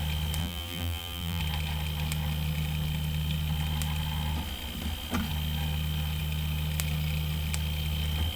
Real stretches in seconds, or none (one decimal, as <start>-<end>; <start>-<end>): 0.0-0.4; 1.4-8.4